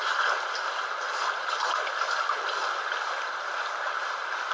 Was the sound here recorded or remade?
recorded